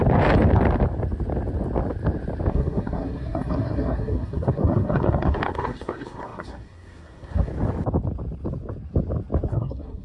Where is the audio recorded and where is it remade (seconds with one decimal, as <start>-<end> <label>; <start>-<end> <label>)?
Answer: 0.0-2.5 recorded; 2.5-7.5 remade; 7.5-9.5 recorded; 9.5-10.0 remade